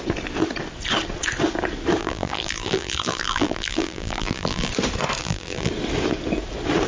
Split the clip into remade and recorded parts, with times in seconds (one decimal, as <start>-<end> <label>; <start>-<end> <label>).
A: 0.0-2.0 recorded; 2.0-4.7 remade; 4.7-5.2 recorded; 5.2-5.7 remade; 5.7-6.9 recorded